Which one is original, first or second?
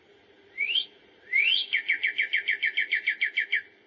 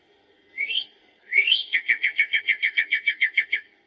first